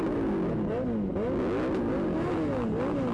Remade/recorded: recorded